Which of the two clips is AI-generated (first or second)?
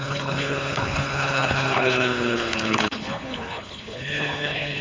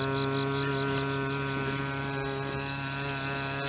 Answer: first